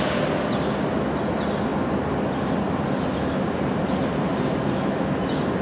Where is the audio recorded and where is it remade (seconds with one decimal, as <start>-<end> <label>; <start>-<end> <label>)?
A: 0.0-5.6 recorded